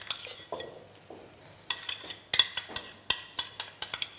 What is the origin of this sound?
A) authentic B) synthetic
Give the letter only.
A